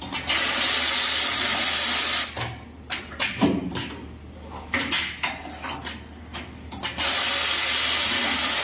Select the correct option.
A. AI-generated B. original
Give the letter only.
B